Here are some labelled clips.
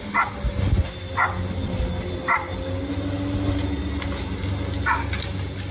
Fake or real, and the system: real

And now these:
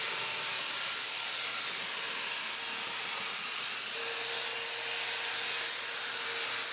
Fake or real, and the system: real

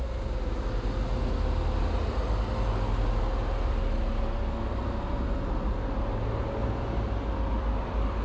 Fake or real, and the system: real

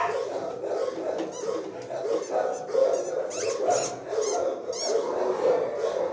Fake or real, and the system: real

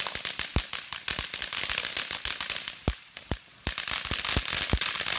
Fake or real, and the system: real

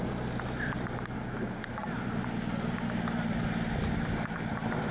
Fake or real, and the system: real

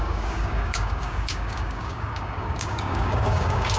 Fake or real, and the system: fake, codec, DAC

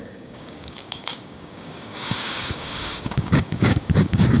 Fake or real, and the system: fake, codec, DAC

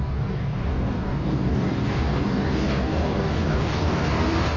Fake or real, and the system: fake, codec, DAC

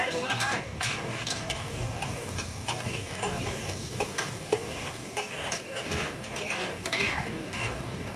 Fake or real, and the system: fake, codec, DAC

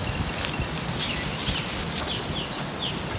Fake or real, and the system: real